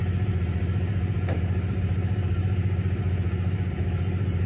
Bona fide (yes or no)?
no